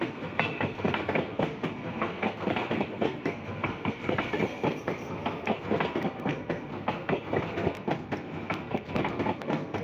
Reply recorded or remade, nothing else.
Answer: remade